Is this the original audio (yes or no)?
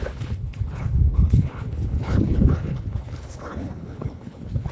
no